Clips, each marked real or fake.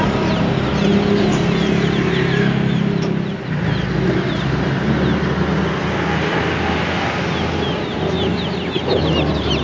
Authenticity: real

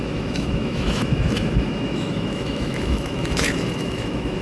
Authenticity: fake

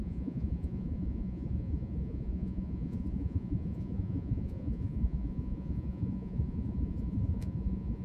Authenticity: fake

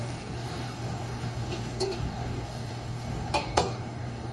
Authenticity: fake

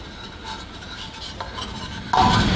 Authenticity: real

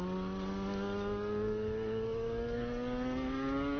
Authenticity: fake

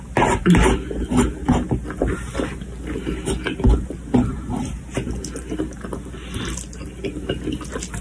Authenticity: real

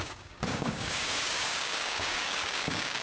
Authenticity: fake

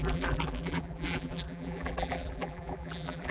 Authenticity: fake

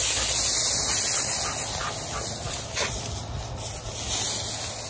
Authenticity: real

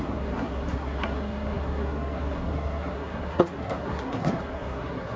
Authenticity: fake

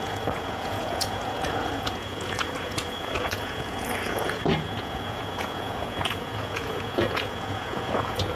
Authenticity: fake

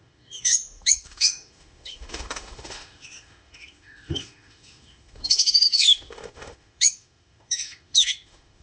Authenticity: fake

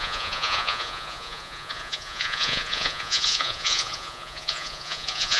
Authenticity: fake